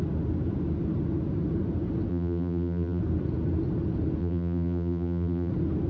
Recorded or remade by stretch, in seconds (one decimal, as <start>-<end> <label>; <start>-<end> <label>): 0.0-2.1 recorded; 2.1-3.0 remade; 3.0-4.2 recorded; 4.2-5.5 remade; 5.5-5.9 recorded